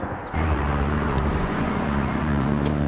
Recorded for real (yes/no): no